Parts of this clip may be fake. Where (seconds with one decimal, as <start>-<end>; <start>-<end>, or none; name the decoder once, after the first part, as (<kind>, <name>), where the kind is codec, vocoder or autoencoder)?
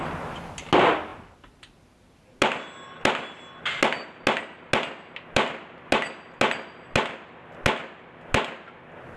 none